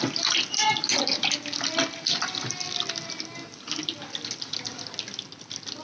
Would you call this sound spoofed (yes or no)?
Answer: no